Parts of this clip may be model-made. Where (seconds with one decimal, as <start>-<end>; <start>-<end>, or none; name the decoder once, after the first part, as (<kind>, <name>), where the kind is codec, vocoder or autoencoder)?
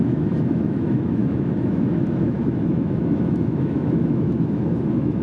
0.0-5.2 (autoencoder, DAC-VAE)